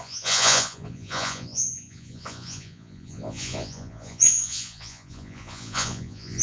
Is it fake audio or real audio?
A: fake